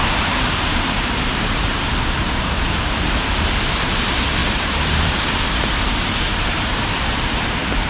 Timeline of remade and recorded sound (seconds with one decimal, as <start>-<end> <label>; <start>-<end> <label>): 0.0-7.9 remade